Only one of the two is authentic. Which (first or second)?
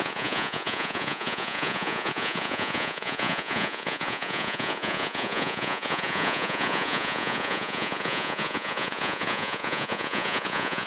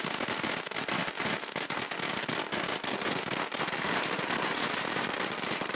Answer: second